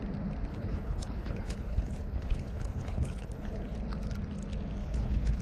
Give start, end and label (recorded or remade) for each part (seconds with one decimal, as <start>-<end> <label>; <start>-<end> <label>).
0.0-0.5 recorded; 0.5-3.7 remade; 3.7-4.8 recorded; 4.8-5.4 remade